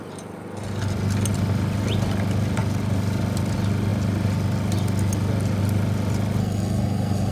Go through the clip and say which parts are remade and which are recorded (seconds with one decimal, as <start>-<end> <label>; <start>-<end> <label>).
0.0-6.4 recorded; 6.4-7.3 remade